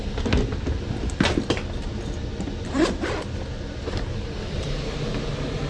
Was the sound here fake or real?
real